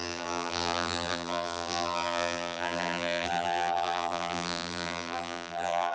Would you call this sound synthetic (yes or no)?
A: yes